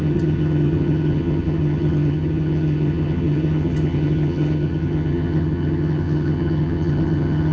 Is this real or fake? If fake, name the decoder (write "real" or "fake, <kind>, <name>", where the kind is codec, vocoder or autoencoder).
fake, vocoder, HiFi-GAN